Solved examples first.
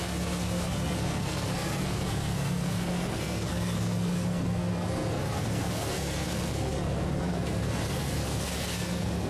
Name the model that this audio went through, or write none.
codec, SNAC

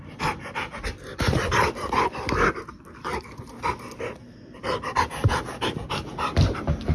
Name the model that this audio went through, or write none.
none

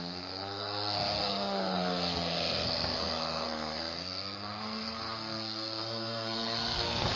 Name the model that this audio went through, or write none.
codec, SNAC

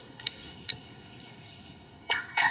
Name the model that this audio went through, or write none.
codec, SNAC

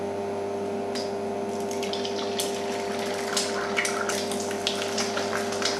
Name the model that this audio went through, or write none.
none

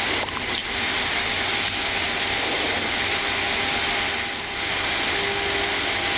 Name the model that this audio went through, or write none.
none